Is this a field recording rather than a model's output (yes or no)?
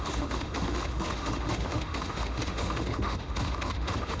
no